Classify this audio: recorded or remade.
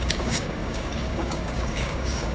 remade